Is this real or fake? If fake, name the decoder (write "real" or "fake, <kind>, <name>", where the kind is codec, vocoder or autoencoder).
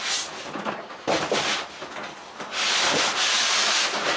real